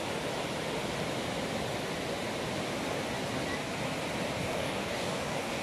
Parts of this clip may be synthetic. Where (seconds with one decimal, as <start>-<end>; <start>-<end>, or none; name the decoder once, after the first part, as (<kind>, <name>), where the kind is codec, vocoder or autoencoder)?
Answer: 4.4-5.6 (codec, DAC)